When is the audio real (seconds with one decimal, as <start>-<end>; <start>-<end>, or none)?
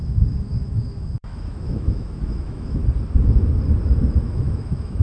2.8-4.2